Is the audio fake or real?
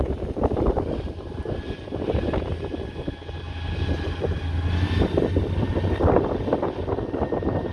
real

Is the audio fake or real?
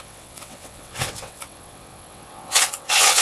fake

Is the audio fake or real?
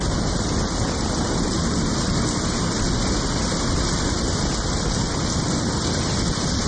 real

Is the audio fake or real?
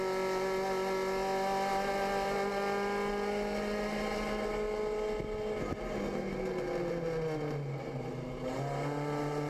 real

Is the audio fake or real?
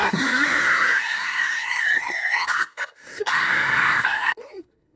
fake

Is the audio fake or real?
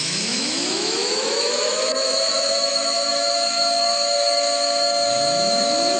fake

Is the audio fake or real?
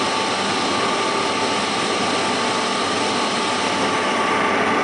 real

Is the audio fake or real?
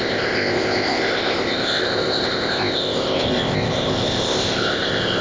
fake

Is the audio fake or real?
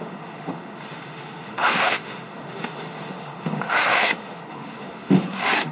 fake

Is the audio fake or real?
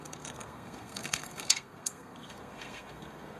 fake